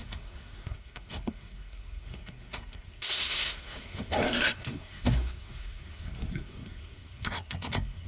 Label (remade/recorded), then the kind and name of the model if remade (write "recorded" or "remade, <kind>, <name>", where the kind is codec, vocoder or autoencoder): remade, codec, SNAC